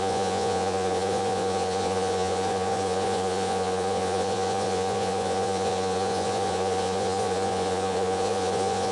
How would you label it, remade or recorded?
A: remade